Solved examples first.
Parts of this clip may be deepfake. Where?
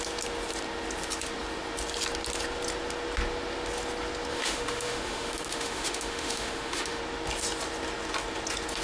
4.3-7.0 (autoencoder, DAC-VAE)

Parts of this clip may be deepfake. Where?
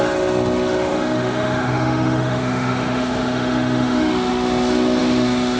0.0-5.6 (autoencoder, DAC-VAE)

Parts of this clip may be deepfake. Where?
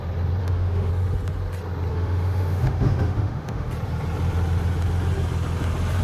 0.4-0.9 (autoencoder, DAC-VAE); 1.9-3.7